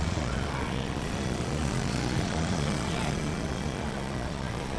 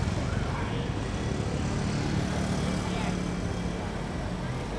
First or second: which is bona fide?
second